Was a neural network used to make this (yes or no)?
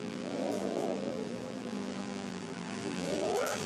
yes